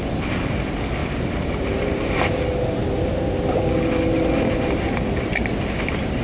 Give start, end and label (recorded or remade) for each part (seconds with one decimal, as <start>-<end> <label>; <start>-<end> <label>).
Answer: 0.0-1.0 recorded; 1.0-2.3 remade; 2.3-2.8 recorded; 2.8-3.8 remade; 3.8-6.2 recorded

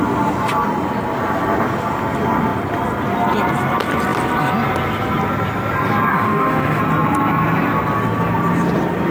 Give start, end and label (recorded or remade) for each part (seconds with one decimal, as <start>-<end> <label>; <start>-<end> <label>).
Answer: 0.0-6.1 recorded; 6.1-6.8 remade; 6.8-9.1 recorded

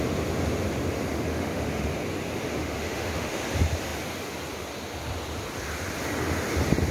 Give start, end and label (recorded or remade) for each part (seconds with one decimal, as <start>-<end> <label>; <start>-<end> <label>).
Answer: 0.0-1.3 recorded; 1.3-1.9 remade; 1.9-2.6 recorded; 2.6-3.4 remade; 3.4-6.9 recorded

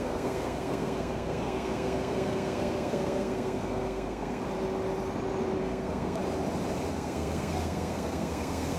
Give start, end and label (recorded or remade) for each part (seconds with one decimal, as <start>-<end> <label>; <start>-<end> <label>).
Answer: 0.0-4.4 remade; 4.4-5.6 recorded; 5.6-6.2 remade; 6.2-6.9 recorded; 6.9-8.8 remade

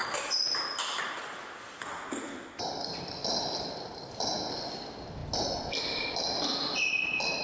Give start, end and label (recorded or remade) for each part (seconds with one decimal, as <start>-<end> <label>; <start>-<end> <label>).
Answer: 0.0-7.4 recorded

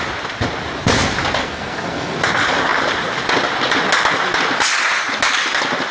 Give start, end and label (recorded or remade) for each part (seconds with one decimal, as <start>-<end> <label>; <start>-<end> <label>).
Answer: 0.0-1.4 recorded; 1.4-2.2 remade; 2.2-5.9 recorded

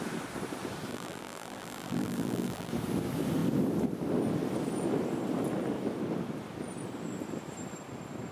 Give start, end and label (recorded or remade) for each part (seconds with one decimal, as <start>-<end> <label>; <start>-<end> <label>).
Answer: 0.0-0.9 recorded; 0.9-2.7 remade; 2.7-8.3 recorded

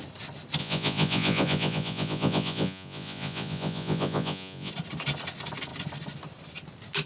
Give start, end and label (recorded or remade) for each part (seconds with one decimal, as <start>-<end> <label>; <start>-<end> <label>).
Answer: 0.0-0.6 recorded; 0.6-4.7 remade; 4.7-7.1 recorded